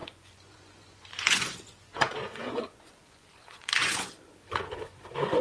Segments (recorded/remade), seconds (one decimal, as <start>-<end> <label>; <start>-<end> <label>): 0.0-5.4 remade

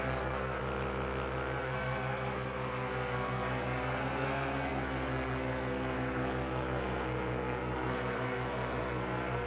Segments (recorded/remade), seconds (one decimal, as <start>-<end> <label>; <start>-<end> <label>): 0.0-0.6 remade; 0.6-1.6 recorded; 1.6-9.5 remade

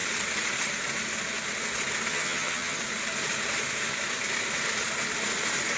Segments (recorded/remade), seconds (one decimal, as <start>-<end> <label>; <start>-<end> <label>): 0.0-2.1 recorded; 2.1-2.8 remade; 2.8-5.8 recorded

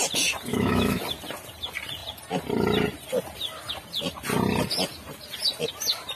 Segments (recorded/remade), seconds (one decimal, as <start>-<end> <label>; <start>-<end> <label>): 0.0-0.5 recorded; 0.5-1.0 remade; 1.0-6.2 recorded

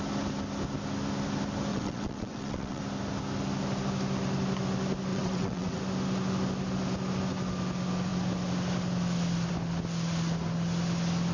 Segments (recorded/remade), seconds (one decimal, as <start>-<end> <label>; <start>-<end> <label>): 0.0-1.7 recorded; 1.7-2.8 remade; 2.8-5.1 recorded; 5.1-5.8 remade; 5.8-11.3 recorded

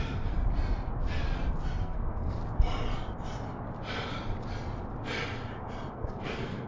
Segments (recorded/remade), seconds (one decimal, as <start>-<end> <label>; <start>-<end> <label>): 0.0-0.4 remade; 0.4-1.8 recorded; 1.8-2.4 remade; 2.4-5.9 recorded; 5.9-6.7 remade

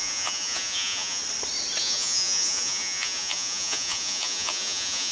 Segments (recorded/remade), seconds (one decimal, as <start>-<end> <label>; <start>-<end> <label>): 0.0-1.2 remade; 1.2-1.8 recorded; 1.8-5.1 remade